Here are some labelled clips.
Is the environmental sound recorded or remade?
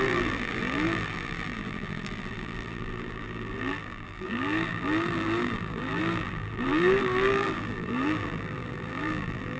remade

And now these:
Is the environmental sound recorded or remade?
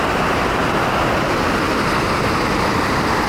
recorded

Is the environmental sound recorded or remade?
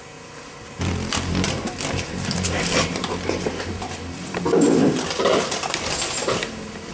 remade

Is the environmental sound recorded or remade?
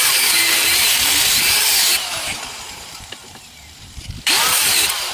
remade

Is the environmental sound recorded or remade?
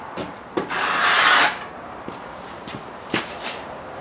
remade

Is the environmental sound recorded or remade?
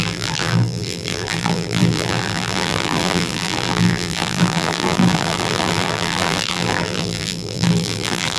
remade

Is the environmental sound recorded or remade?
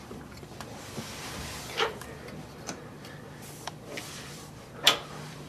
remade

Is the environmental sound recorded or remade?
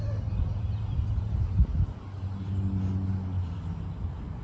recorded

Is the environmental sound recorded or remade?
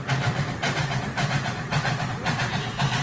remade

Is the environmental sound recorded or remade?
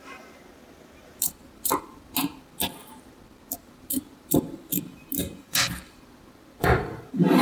remade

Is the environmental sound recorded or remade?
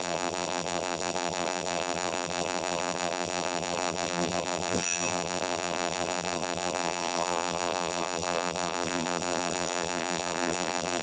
remade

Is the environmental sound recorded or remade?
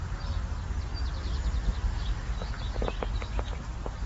recorded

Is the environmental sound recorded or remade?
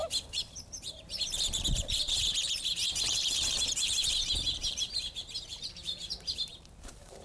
remade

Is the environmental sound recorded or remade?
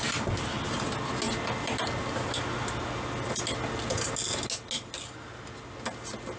recorded